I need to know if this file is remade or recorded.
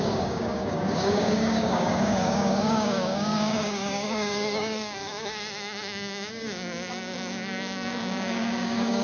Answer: remade